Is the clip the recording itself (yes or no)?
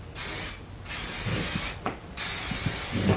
yes